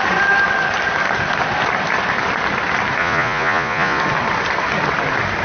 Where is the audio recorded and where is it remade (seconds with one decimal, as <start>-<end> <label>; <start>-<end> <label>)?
0.0-3.0 recorded; 3.0-4.0 remade; 4.0-5.4 recorded